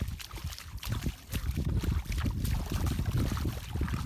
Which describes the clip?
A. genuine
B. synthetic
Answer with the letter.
A